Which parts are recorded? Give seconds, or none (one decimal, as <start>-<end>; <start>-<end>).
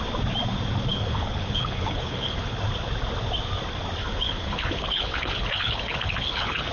0.0-0.9; 2.6-4.0